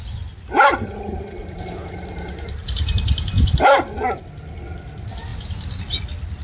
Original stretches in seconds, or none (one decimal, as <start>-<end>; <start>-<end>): 0.0-1.4; 2.9-6.4